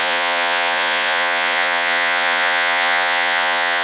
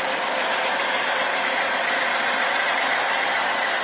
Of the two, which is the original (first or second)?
second